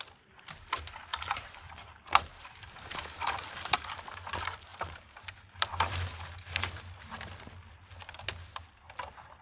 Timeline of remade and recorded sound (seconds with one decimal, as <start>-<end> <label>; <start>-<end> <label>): 0.0-1.1 recorded; 1.1-4.0 remade; 4.0-4.7 recorded; 4.7-6.7 remade; 6.7-9.4 recorded